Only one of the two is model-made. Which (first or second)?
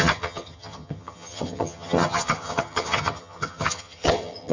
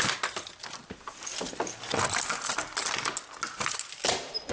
first